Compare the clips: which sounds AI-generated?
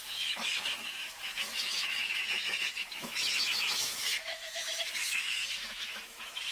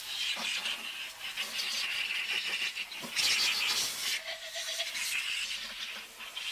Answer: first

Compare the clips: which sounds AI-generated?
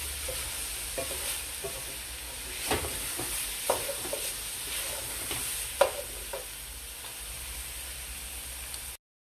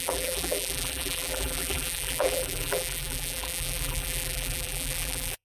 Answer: second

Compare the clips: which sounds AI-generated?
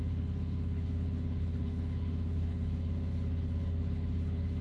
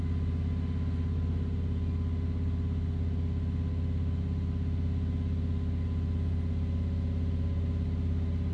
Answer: first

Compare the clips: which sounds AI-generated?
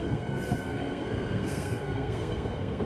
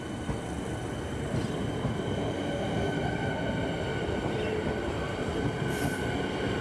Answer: first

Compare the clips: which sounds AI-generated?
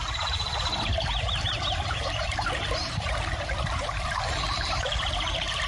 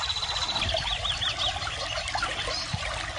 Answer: first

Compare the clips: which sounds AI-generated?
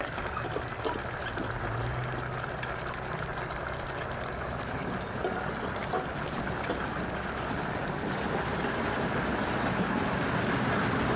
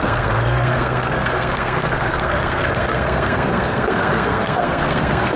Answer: second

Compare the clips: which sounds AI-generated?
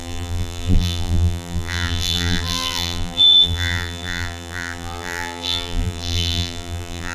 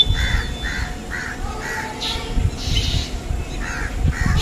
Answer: first